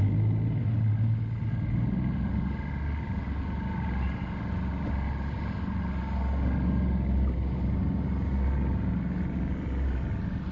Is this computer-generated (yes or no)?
no